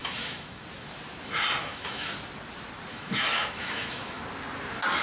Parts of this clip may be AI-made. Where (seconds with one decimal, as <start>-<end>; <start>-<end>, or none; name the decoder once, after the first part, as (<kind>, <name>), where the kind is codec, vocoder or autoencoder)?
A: 0.0-0.6 (autoencoder, DAC-VAE); 1.6-2.1; 2.9-4.2